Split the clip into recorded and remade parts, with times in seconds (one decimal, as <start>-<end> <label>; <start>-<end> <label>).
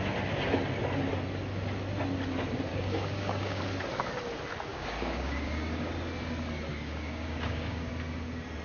0.0-2.7 recorded; 2.7-3.6 remade; 3.6-4.7 recorded; 4.7-5.9 remade; 5.9-6.7 recorded; 6.7-7.9 remade; 7.9-8.6 recorded